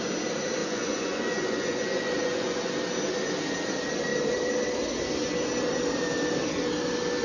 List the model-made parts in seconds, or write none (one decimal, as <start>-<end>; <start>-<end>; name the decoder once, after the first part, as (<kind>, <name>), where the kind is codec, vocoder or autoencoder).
0.6-2.7 (vocoder, Vocos)